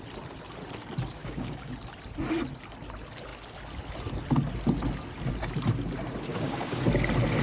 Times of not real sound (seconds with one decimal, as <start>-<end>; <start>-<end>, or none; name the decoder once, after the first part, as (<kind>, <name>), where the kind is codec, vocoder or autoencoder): 1.2-1.7 (codec, DAC); 6.3-6.8